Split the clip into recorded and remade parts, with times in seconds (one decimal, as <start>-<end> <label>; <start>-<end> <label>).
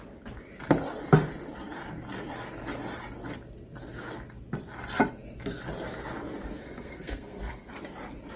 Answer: 0.0-6.6 recorded; 6.6-7.7 remade; 7.7-8.4 recorded